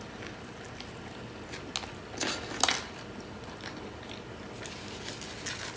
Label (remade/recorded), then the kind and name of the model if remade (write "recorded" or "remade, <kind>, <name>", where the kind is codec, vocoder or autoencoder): recorded